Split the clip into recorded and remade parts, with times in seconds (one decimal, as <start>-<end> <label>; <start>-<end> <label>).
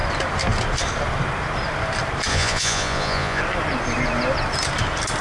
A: 0.0-2.3 recorded; 2.3-3.4 remade; 3.4-5.2 recorded